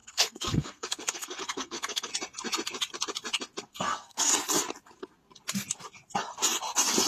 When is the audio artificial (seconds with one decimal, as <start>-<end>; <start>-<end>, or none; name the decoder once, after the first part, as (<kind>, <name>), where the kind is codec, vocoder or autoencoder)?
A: 0.0-2.1 (codec, SNAC); 3.7-4.3